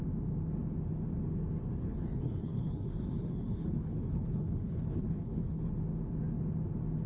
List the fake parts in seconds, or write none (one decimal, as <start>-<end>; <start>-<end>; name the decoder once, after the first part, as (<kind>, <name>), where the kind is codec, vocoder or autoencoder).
1.8-5.7 (codec, HILCodec)